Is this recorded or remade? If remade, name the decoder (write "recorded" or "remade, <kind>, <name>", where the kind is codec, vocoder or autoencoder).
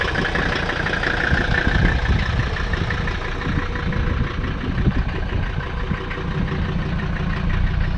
recorded